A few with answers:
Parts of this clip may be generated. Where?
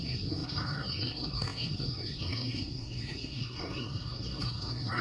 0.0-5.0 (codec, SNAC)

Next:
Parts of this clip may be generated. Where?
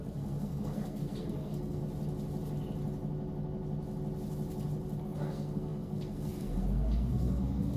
0.0-1.8 (codec, SNAC); 5.0-7.8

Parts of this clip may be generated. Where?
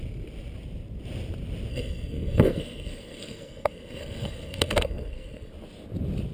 1.7-5.5 (codec, SNAC)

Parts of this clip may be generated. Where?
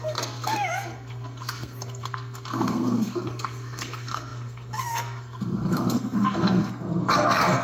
0.0-7.6 (codec, SNAC)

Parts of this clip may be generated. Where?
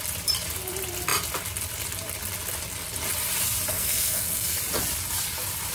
3.7-4.6 (codec, SNAC)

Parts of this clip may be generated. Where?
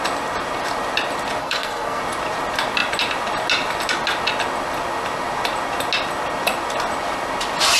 1.4-2.0 (codec, SNAC)